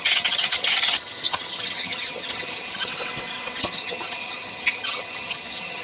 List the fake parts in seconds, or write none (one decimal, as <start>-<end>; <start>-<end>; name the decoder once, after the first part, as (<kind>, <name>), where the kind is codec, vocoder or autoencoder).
0.0-2.9 (vocoder, HiFi-GAN); 3.6-5.8